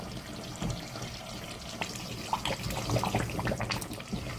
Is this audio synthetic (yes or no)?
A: no